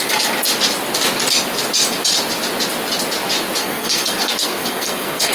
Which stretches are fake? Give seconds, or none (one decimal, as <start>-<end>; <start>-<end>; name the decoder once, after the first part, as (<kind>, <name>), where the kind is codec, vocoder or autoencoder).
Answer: 3.6-5.3 (codec, SNAC)